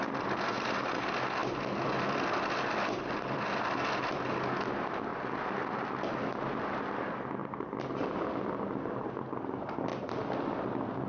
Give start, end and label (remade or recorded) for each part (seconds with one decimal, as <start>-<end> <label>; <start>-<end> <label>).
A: 0.0-1.4 recorded; 1.4-4.2 remade; 4.2-7.4 recorded; 7.4-8.5 remade; 8.5-9.9 recorded; 9.9-10.5 remade; 10.5-11.1 recorded